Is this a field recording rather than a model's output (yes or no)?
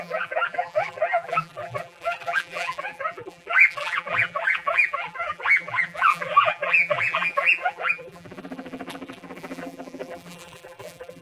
no